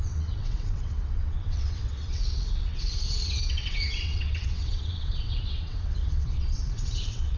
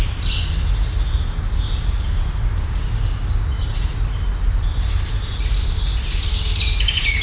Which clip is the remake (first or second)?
first